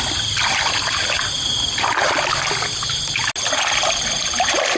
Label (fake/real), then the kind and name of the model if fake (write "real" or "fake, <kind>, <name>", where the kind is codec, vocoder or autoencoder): real